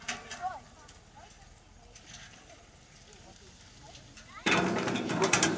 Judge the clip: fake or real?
real